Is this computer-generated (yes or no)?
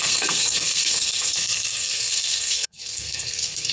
yes